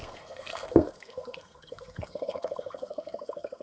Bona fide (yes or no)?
no